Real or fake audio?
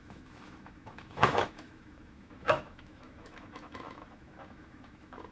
fake